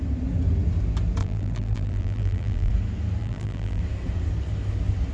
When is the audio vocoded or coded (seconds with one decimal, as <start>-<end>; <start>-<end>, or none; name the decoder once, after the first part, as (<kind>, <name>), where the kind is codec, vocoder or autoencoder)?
1.2-2.7 (vocoder, BigVGAN v2); 3.2-3.8